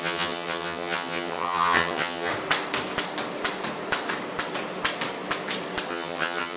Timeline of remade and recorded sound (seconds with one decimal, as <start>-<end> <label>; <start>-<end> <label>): 0.0-2.3 remade; 2.3-5.9 recorded; 5.9-6.6 remade